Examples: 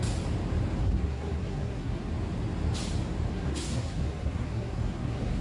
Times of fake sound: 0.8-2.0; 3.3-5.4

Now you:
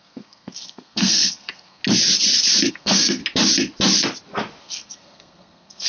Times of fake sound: 0.0-1.8; 2.7-3.2; 4.6-5.9

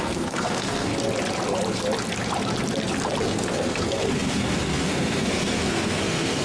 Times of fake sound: 0.0-0.9; 3.2-6.4

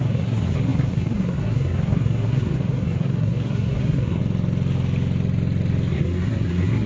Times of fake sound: 0.0-4.2; 5.9-6.9

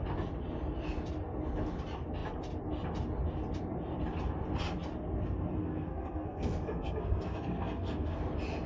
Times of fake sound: 5.6-8.2

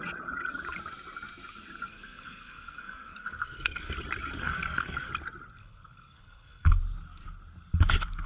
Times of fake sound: 1.9-3.9; 4.4-5.1; 5.6-6.8